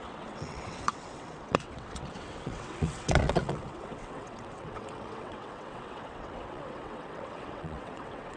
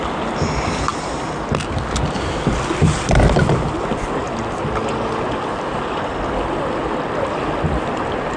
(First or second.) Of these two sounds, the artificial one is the first